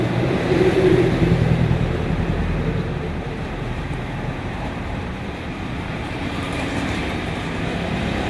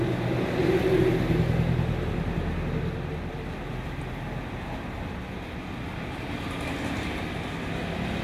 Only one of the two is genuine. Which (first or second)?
second